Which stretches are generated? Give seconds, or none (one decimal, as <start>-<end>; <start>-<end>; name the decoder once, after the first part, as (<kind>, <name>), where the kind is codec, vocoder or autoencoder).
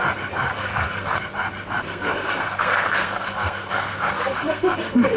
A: 0.5-1.2 (codec, SNAC); 1.8-5.2